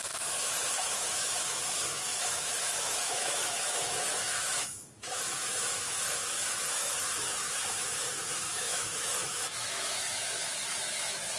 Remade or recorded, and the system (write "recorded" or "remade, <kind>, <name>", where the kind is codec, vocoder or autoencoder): remade, autoencoder, DAC-VAE